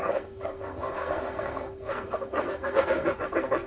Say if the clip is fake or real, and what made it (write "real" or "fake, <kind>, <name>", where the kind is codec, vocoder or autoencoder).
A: fake, codec, SNAC